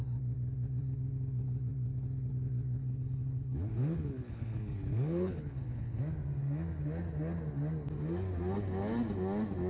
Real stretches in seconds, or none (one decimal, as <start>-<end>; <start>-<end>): 0.0-2.8; 6.0-9.7